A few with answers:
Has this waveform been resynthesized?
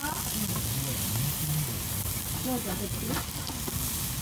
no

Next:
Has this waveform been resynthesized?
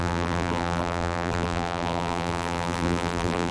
yes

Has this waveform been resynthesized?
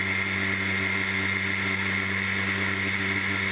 no